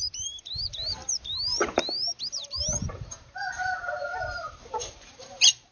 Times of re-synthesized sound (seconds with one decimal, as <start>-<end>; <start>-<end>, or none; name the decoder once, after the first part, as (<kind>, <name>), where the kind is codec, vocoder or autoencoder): 0.0-5.7 (vocoder, BigVGAN v2)